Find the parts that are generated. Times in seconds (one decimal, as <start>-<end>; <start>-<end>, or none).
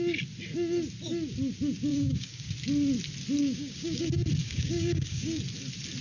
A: 1.9-2.5; 3.4-4.0; 4.4-5.4